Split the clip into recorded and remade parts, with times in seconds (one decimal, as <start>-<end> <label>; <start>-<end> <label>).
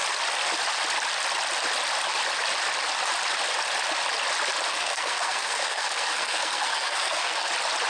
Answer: 0.0-4.7 recorded; 4.7-7.5 remade; 7.5-7.9 recorded